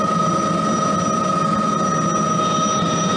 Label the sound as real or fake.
real